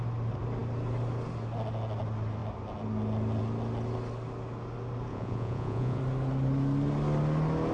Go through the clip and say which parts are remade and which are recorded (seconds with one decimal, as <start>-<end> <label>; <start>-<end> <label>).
0.0-5.1 recorded; 5.1-6.0 remade; 6.0-7.7 recorded